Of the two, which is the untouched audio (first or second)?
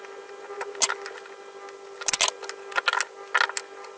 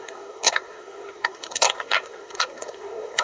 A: first